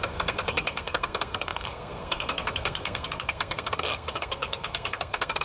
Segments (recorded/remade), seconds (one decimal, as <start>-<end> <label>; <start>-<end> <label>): 0.0-5.4 remade